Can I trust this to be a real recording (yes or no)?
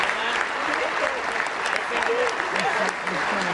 yes